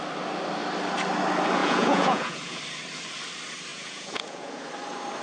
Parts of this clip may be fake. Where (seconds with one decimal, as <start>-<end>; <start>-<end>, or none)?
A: 1.6-2.6; 3.7-4.7